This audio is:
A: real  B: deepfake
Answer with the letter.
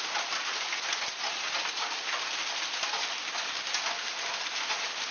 A